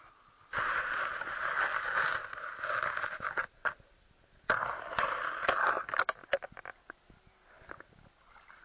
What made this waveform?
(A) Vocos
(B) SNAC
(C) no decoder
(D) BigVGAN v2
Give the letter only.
C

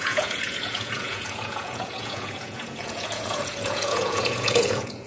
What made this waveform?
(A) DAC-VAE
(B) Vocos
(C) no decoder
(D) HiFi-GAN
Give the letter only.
B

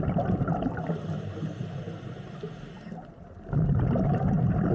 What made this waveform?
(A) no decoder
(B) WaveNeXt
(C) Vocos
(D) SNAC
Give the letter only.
A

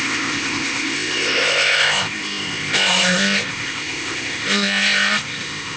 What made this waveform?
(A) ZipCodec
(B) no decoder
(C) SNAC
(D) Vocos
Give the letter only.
A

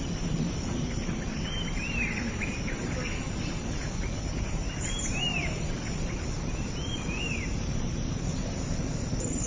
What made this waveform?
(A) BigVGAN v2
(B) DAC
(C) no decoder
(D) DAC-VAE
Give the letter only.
A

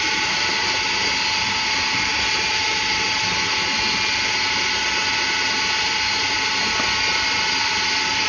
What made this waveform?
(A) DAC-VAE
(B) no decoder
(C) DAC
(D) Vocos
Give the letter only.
B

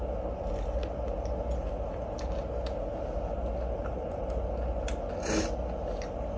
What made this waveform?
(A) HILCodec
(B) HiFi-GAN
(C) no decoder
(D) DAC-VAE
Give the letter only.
C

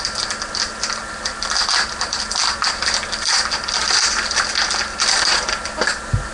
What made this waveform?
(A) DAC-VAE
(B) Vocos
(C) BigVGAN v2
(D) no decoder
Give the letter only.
D